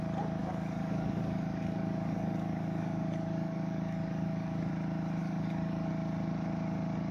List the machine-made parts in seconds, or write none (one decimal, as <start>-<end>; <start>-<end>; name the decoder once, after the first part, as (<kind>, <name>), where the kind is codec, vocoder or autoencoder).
0.4-4.7 (codec, DAC); 5.2-5.9